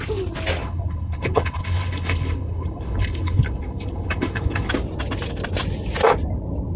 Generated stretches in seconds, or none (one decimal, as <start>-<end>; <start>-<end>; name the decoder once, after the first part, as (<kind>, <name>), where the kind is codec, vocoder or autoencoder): 0.6-4.7 (codec, HILCodec)